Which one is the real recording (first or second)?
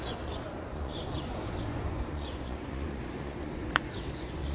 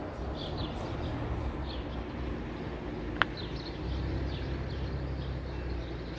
second